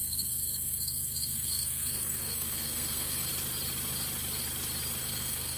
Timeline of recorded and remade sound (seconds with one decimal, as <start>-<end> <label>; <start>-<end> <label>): 0.0-3.3 remade; 3.3-5.0 recorded; 5.0-5.6 remade